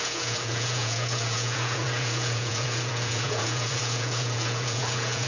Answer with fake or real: fake